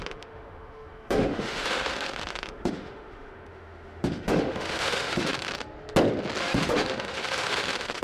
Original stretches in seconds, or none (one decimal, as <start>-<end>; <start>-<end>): 5.5-6.4